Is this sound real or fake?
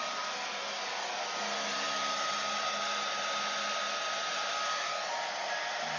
real